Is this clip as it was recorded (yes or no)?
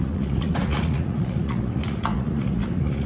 no